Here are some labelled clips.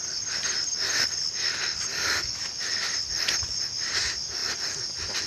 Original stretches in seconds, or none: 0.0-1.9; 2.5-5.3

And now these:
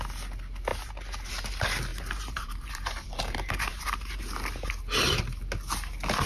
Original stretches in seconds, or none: 0.0-0.7; 1.3-1.9; 4.2-6.3

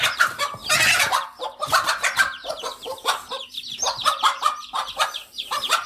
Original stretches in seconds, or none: 0.6-1.9

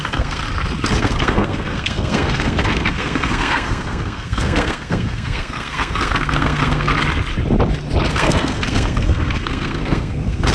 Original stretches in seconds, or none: 0.4-0.9; 6.9-8.1

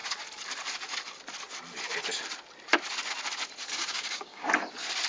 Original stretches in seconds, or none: 0.0-3.7; 4.5-5.1